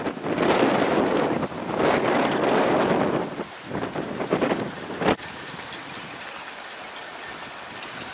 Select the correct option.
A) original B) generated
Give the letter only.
A